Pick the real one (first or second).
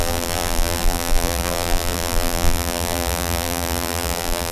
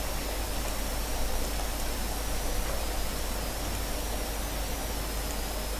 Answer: second